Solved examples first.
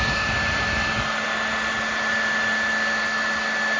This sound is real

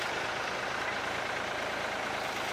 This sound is fake